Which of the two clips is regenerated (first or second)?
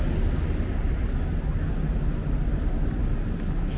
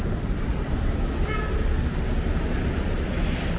second